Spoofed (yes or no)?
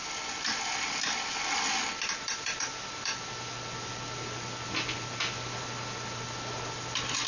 no